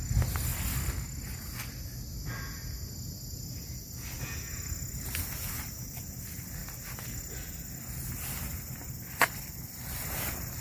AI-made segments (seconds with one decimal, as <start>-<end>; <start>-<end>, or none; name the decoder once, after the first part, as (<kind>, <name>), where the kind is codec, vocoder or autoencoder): 0.0-0.5 (vocoder, BigVGAN v2); 5.5-6.6; 8.3-10.6